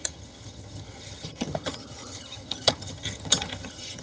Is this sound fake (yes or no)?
yes